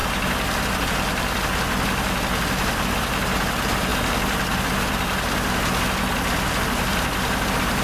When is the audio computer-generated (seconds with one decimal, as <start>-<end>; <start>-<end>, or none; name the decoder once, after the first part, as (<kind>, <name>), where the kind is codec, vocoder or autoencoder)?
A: none